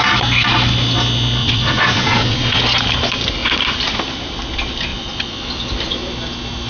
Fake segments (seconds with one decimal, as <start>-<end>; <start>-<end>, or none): 1.4-2.6; 4.9-5.7